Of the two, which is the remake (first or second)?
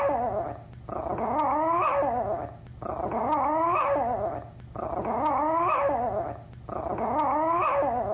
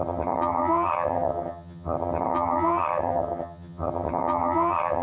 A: second